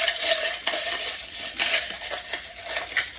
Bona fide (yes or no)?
yes